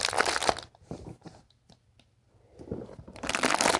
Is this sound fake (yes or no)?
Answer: no